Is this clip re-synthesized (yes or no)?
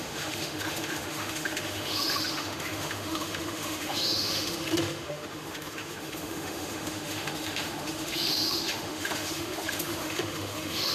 yes